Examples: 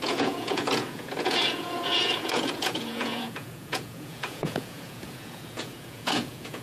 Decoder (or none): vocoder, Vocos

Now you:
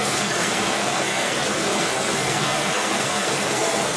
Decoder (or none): codec, SNAC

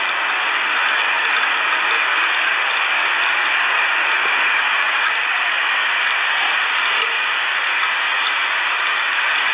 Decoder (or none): none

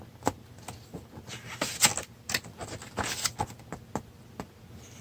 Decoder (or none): none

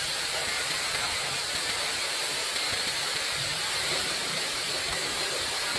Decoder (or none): vocoder, BigVGAN v2